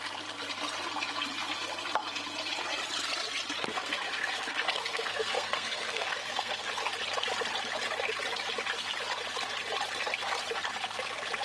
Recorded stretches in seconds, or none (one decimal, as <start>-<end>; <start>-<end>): 0.0-3.7; 6.7-11.4